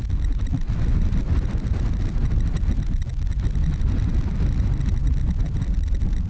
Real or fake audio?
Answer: real